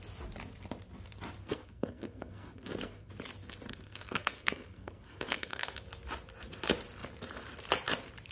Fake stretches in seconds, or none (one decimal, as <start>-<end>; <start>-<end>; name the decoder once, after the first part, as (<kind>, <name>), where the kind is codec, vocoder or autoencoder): 1.4-3.1 (codec, SNAC); 3.7-5.8